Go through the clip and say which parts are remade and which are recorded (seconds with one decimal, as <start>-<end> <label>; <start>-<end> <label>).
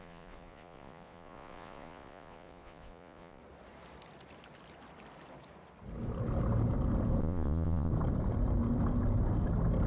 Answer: 0.0-3.4 remade; 3.4-7.2 recorded; 7.2-7.9 remade; 7.9-9.9 recorded